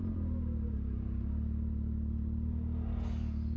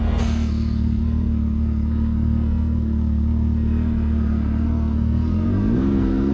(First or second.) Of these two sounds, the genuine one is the first